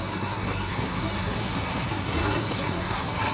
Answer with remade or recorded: remade